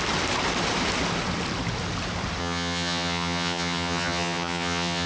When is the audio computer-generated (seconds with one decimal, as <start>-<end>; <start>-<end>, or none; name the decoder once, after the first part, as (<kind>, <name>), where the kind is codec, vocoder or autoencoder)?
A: 2.4-5.1 (vocoder, HiFi-GAN)